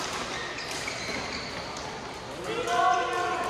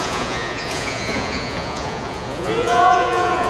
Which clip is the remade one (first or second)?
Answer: second